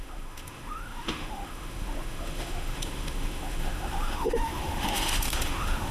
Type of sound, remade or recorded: remade